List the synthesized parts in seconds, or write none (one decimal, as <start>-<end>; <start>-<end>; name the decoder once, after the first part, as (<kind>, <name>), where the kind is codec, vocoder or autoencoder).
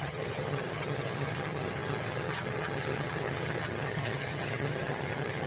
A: 0.0-5.5 (vocoder, HiFi-GAN)